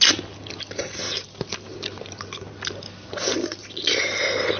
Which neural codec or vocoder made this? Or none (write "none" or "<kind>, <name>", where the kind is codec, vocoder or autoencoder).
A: none